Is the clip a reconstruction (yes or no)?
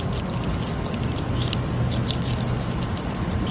no